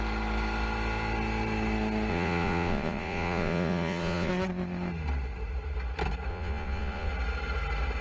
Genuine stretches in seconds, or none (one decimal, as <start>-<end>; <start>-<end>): 0.0-2.1; 4.3-6.3; 7.1-8.0